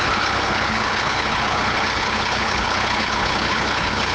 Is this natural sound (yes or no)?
no